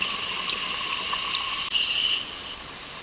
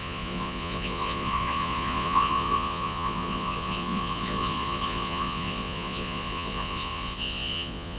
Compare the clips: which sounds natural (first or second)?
first